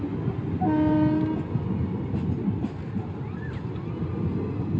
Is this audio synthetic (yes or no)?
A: no